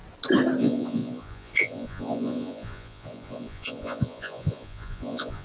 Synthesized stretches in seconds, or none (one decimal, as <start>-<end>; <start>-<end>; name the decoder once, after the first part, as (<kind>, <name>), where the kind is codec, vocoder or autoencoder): 0.6-5.4 (vocoder, Vocos)